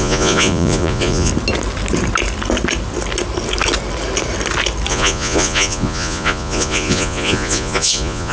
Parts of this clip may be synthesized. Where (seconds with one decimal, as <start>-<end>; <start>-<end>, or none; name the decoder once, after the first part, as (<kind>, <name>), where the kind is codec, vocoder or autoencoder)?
0.0-1.3 (vocoder, Vocos); 4.9-8.3

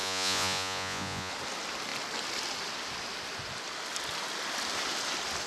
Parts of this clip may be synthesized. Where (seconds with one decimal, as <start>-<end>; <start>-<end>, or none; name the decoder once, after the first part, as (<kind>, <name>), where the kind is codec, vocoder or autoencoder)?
0.0-1.3 (vocoder, Vocos)

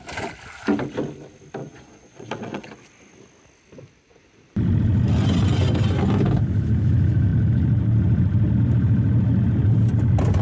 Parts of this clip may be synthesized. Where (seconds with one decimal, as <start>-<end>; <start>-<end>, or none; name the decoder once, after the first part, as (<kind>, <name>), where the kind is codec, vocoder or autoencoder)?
1.6-2.7 (vocoder, Vocos)

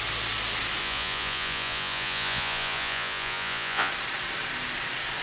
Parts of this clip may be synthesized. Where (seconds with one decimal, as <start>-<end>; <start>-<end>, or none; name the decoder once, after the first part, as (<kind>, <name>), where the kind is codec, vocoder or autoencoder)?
0.8-3.9 (vocoder, Vocos)